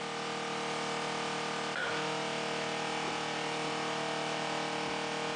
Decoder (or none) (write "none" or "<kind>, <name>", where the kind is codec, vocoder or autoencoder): none